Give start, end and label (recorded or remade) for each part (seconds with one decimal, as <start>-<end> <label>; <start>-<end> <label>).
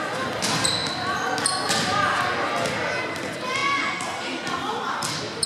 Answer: 0.0-5.5 recorded